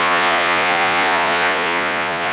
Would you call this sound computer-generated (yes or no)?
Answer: yes